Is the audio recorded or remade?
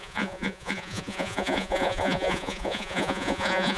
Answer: remade